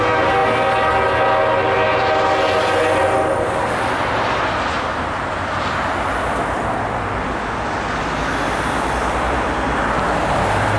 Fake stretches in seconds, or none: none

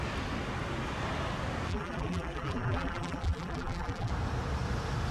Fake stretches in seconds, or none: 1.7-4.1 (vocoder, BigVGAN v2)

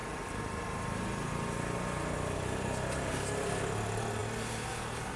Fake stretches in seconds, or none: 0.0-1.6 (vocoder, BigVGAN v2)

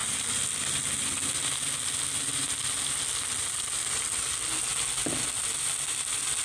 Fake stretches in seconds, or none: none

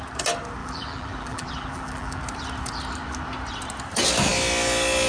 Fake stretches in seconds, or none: 0.6-2.2 (vocoder, BigVGAN v2)